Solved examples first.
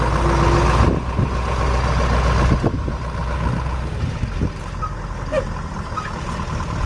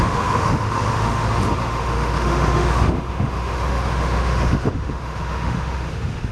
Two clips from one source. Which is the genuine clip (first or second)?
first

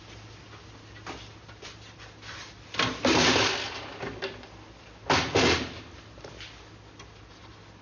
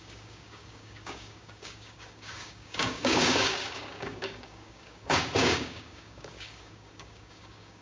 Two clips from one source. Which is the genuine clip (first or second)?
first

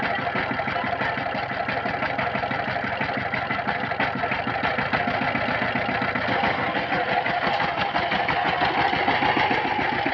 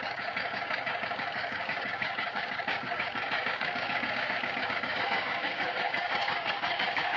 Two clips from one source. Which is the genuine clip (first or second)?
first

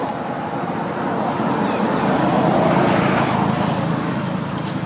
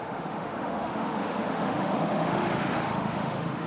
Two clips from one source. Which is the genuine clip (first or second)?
first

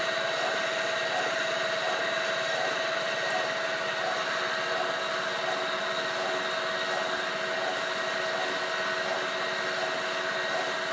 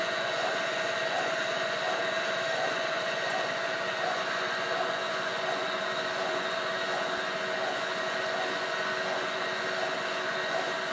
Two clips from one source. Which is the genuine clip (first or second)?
first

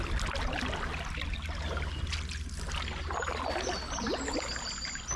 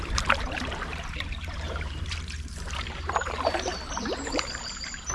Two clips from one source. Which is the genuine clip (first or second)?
first